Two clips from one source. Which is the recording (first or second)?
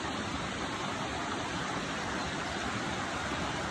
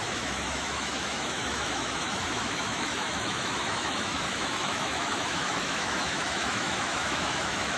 first